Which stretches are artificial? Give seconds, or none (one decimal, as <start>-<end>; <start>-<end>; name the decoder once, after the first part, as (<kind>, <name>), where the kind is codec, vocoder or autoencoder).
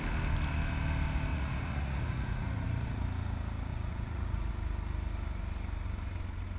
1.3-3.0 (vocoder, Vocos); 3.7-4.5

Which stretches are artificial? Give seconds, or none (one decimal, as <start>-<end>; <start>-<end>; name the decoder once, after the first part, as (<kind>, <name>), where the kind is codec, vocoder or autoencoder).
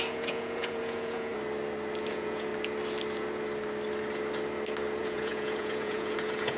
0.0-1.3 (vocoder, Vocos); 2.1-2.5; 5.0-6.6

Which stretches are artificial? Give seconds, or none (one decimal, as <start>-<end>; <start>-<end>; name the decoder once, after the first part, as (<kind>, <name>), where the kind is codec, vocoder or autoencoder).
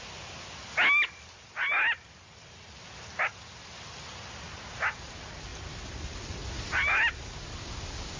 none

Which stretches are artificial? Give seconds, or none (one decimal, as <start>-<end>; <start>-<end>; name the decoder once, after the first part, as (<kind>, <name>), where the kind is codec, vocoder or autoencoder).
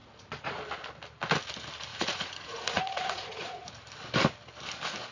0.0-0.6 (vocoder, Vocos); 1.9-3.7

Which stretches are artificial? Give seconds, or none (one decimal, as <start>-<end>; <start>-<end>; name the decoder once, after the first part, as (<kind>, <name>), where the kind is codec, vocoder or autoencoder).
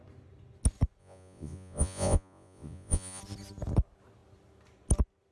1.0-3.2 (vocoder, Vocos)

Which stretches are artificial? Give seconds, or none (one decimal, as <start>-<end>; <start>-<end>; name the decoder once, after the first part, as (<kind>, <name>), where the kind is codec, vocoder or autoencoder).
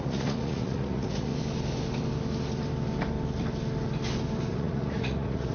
0.0-1.3 (vocoder, Vocos); 4.5-5.5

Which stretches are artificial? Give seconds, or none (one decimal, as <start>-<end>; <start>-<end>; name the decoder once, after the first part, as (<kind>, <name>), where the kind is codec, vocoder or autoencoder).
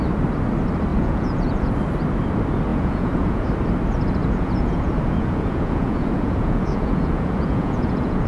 0.9-1.7 (vocoder, Vocos); 2.7-3.5; 4.2-8.3